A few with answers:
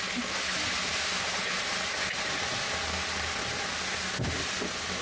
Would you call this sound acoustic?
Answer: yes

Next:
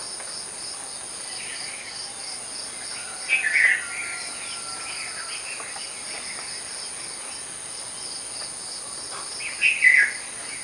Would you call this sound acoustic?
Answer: yes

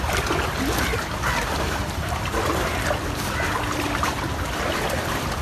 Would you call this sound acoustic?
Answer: yes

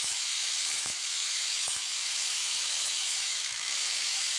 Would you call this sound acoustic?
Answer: no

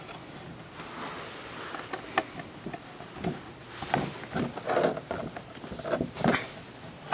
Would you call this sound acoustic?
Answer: yes